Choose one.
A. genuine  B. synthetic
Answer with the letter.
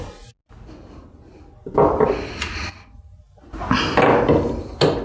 A